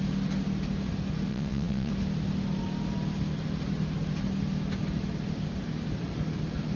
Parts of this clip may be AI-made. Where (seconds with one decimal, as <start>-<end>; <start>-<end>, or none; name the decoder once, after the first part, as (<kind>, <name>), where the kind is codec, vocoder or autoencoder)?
1.3-1.9 (vocoder, WaveNeXt)